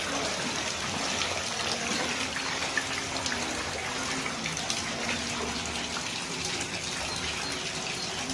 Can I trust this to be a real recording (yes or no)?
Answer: yes